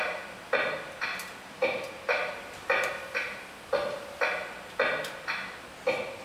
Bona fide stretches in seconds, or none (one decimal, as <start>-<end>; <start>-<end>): 0.0-1.1; 2.9-6.2